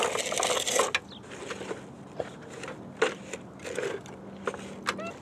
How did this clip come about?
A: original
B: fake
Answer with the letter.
A